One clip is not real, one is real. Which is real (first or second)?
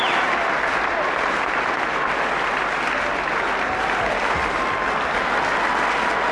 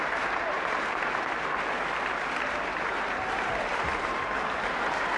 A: first